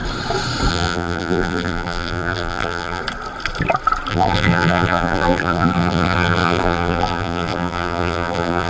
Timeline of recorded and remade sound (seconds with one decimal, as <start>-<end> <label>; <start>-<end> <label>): 0.0-0.7 recorded; 0.7-3.0 remade; 3.0-4.1 recorded; 4.1-8.7 remade